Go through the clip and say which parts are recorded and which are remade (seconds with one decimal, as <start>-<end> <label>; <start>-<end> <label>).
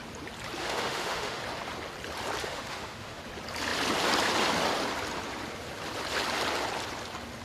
0.0-0.6 recorded; 0.6-1.4 remade; 1.4-2.4 recorded; 2.4-3.2 remade; 3.2-7.4 recorded